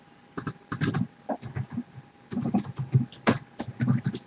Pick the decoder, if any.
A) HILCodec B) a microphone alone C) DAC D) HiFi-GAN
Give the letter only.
B